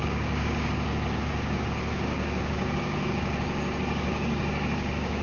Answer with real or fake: fake